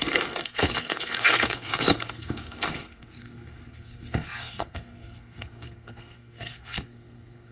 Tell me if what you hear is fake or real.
fake